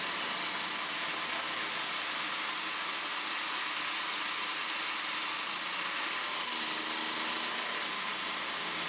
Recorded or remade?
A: recorded